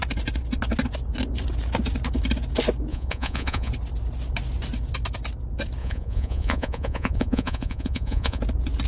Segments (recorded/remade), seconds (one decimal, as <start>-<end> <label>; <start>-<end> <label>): 0.0-2.9 recorded; 2.9-3.7 remade; 3.7-5.8 recorded; 5.8-8.4 remade; 8.4-8.9 recorded

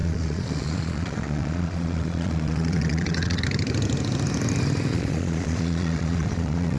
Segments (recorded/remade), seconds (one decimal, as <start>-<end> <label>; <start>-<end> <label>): 0.0-3.4 remade; 3.4-4.9 recorded; 4.9-6.8 remade

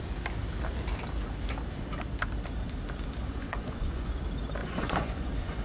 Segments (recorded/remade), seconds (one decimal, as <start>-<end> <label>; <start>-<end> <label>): 0.0-3.2 recorded; 3.2-4.1 remade; 4.1-4.6 recorded; 4.6-5.6 remade

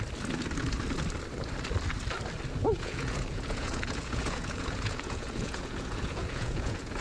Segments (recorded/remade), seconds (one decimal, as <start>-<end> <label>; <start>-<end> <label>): 0.0-2.6 recorded; 2.6-7.0 remade

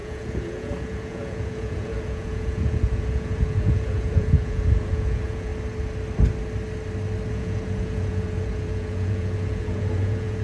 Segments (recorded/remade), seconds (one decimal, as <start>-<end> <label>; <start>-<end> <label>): 0.0-5.5 remade; 5.5-7.3 recorded; 7.3-10.4 remade

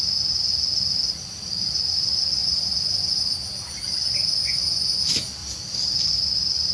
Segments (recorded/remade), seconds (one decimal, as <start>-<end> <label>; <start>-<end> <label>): 0.0-2.4 recorded; 2.4-3.1 remade; 3.1-4.4 recorded; 4.4-5.0 remade; 5.0-6.7 recorded